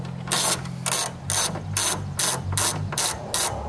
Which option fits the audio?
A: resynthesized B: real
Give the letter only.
B